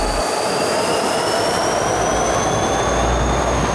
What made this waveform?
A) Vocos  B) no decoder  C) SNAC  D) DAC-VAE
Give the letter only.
B